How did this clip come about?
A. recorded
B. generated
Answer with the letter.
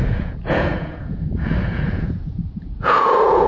B